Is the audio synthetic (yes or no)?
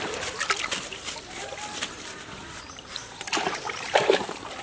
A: yes